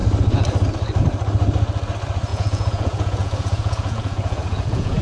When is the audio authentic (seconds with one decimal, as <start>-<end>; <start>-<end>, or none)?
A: 0.0-2.3

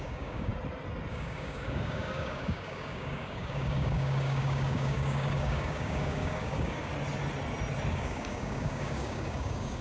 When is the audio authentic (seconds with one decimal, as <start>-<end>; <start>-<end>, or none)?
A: 0.5-1.1; 6.9-7.9

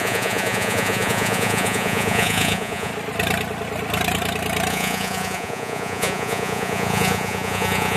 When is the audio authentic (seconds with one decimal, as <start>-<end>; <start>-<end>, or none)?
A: 2.9-4.7